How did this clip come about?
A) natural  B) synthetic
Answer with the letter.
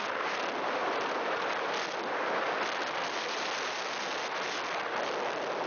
A